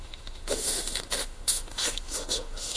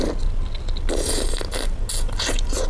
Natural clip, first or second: second